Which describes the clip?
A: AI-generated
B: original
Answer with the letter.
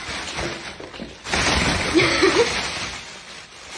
B